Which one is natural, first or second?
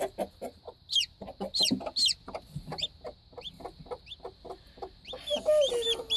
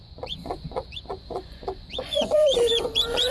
first